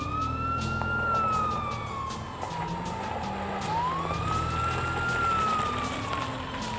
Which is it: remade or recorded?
recorded